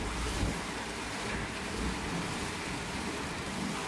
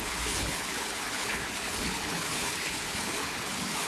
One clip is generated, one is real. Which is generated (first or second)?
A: second